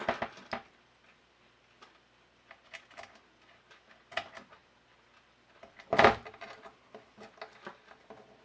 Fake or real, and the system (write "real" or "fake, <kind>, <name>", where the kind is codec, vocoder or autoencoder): real